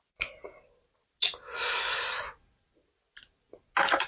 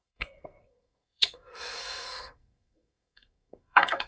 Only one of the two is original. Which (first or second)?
first